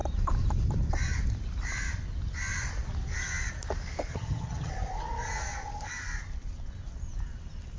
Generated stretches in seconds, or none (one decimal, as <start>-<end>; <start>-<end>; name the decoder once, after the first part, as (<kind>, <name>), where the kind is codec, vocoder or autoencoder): 4.1-4.7 (vocoder, HiFi-GAN)